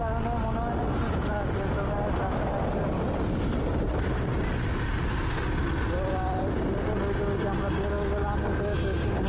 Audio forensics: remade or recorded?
recorded